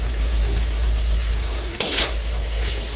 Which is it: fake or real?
fake